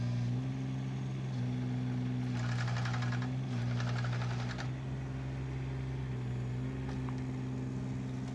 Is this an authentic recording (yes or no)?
yes